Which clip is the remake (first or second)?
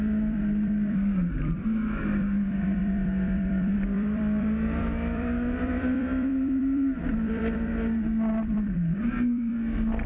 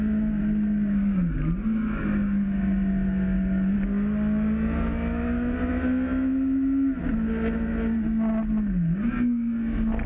first